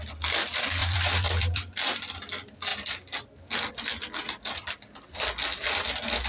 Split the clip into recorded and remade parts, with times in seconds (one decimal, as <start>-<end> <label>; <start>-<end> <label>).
0.0-0.8 recorded; 0.8-2.1 remade; 2.1-6.3 recorded